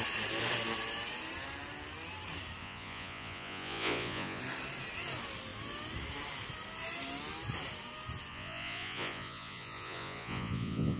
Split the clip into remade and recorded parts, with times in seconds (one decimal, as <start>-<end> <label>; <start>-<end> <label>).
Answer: 0.0-2.6 recorded; 2.6-4.4 remade; 4.4-8.3 recorded; 8.3-11.0 remade